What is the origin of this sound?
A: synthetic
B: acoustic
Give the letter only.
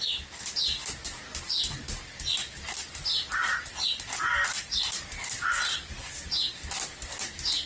B